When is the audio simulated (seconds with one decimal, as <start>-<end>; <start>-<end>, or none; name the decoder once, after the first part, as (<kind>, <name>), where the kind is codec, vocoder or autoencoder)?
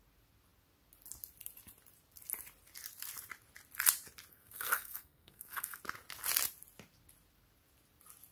4.3-5.8 (codec, SNAC)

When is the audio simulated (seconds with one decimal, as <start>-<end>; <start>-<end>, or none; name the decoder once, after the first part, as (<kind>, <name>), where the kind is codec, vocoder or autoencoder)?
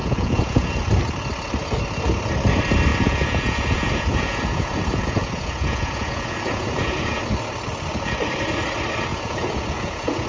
0.0-0.8 (vocoder, Vocos); 2.9-7.2; 9.1-10.3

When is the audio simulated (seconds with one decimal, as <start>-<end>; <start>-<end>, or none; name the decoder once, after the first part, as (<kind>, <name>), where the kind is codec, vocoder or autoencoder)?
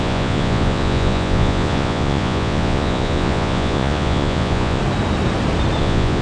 0.0-4.8 (vocoder, Vocos); 5.8-6.2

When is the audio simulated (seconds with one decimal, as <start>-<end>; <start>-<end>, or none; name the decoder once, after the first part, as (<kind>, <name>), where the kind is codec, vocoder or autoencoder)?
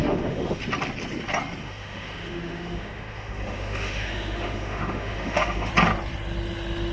0.0-0.6 (autoencoder, DAC-VAE); 1.6-5.7